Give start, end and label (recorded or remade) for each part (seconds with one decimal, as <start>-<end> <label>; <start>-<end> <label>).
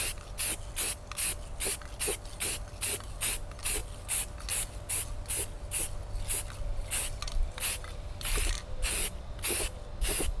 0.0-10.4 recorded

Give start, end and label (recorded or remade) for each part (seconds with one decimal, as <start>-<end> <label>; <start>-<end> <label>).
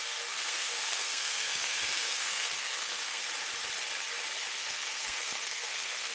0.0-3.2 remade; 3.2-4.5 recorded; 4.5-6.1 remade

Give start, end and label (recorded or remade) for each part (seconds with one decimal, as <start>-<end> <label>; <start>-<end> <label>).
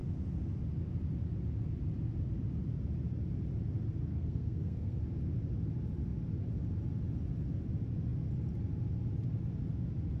0.0-4.1 recorded; 4.1-5.0 remade; 5.0-10.2 recorded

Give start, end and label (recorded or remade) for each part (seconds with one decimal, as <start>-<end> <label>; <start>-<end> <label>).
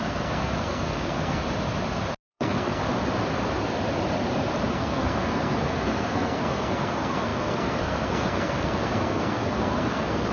0.0-1.4 remade; 1.4-2.3 recorded; 2.3-2.8 remade; 2.8-4.7 recorded; 4.7-10.3 remade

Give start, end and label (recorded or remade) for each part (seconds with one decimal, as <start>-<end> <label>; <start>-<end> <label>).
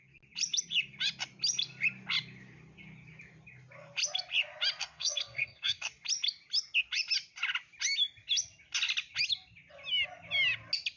0.0-4.8 recorded; 4.8-5.9 remade; 5.9-11.0 recorded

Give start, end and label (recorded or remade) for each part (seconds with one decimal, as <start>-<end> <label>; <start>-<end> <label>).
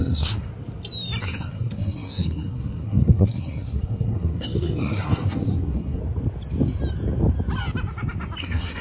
0.0-0.5 remade; 0.5-1.2 recorded; 1.2-6.0 remade; 6.0-8.4 recorded; 8.4-8.8 remade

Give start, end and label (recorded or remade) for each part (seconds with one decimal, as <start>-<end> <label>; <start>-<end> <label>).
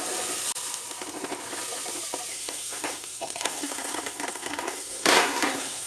0.0-2.3 recorded; 2.3-5.9 remade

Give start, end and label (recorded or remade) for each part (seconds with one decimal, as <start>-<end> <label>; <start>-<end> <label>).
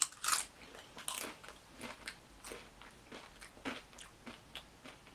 0.0-5.1 recorded